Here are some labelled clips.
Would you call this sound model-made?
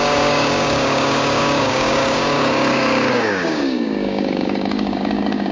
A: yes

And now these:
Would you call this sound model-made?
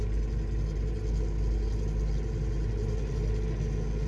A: no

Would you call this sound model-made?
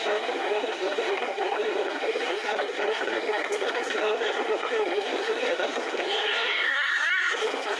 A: yes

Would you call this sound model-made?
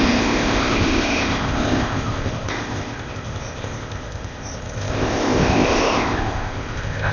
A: yes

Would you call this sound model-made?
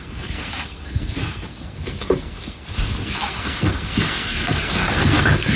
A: yes